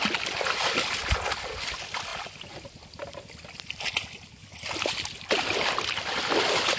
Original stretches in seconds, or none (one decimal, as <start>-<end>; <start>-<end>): 0.0-6.8